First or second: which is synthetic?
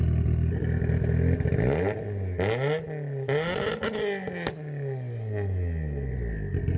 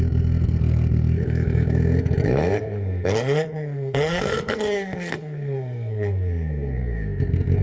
second